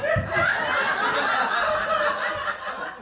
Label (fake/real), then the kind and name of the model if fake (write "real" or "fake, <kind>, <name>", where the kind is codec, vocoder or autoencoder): real